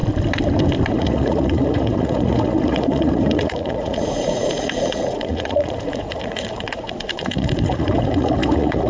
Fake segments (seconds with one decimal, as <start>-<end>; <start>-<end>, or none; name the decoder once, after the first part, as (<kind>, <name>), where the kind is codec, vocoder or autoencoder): 0.9-8.9 (vocoder, Vocos)